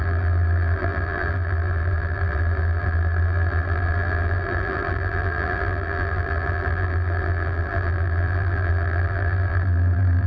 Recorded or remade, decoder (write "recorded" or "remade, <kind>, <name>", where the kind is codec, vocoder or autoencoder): remade, vocoder, BigVGAN v2